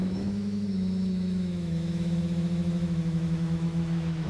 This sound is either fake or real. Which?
fake